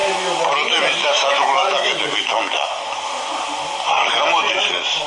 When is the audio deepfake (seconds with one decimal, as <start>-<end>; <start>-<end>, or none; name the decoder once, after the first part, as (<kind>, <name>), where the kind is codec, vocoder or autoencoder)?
1.0-3.0 (autoencoder, DAC-VAE)